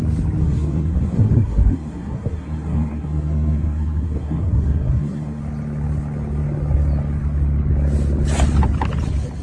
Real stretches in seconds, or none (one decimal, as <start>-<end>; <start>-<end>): 0.0-0.4; 5.4-9.4